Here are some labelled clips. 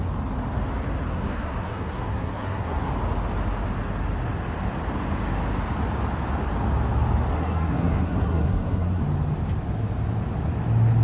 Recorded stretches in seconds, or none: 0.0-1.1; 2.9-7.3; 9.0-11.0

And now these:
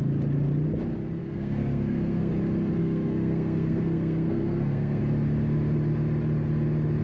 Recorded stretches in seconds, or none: 0.0-1.2; 2.3-2.8; 5.0-7.0

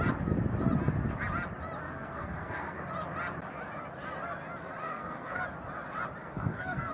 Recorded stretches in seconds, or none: 0.0-1.8; 2.8-4.8; 5.4-6.2

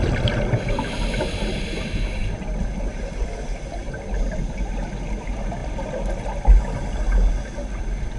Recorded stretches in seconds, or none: 0.0-8.2